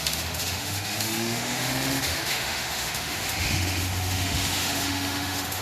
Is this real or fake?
fake